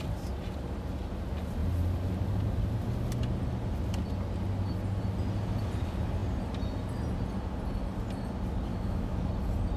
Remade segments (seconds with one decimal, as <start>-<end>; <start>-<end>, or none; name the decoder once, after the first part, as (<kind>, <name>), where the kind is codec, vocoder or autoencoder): 8.7-9.3 (autoencoder, DAC-VAE)